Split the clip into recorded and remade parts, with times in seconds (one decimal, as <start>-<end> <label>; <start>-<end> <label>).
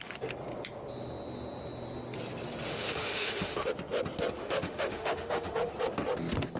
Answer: 0.0-2.7 recorded; 2.7-3.7 remade; 3.7-4.4 recorded; 4.4-5.7 remade; 5.7-6.6 recorded